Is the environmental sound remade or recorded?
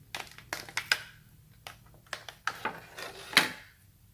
recorded